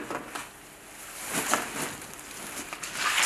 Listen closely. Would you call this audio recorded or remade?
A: recorded